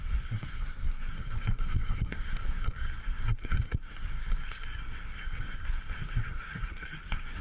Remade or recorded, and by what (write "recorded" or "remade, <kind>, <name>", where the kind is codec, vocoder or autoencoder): remade, codec, SNAC